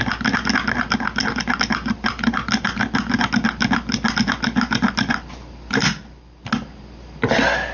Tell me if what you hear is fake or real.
real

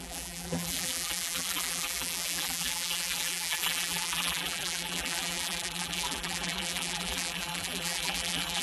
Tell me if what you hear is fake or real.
fake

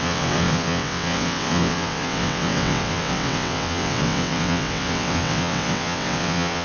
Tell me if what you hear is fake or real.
fake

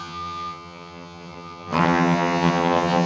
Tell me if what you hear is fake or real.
fake